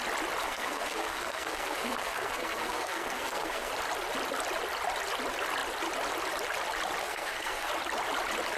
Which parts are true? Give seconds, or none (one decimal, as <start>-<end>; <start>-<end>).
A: 0.0-0.4; 3.7-7.0; 7.7-8.6